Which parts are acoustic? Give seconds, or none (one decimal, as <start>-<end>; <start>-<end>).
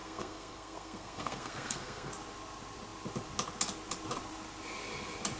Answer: 2.1-5.4